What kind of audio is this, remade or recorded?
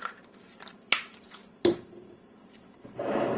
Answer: remade